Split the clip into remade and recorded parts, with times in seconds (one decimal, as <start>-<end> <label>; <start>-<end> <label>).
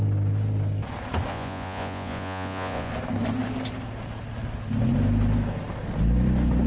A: 0.0-1.3 recorded; 1.3-2.9 remade; 2.9-6.7 recorded